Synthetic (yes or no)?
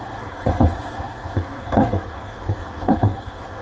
yes